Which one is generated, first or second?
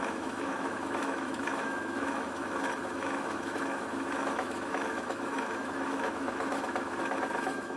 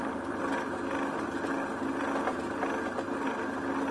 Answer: first